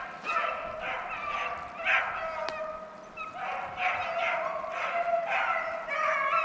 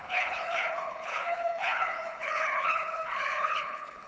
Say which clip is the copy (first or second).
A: second